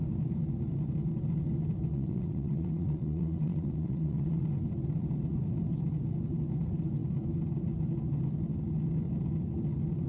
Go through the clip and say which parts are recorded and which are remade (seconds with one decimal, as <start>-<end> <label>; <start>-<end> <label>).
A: 0.0-1.9 recorded; 1.9-4.4 remade; 4.4-10.1 recorded